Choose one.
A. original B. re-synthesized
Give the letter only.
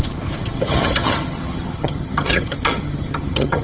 B